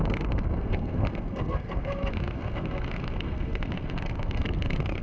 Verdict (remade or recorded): remade